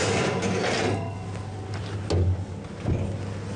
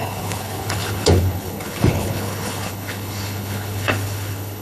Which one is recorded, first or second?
first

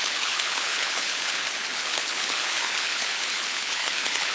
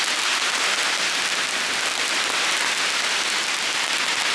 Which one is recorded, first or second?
second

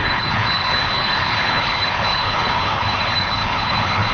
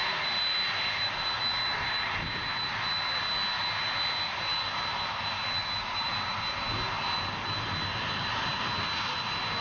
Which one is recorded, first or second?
second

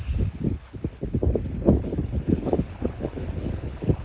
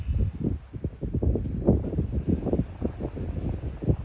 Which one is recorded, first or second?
second